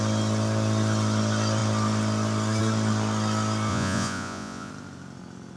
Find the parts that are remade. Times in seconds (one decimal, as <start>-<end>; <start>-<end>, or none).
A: 3.7-4.7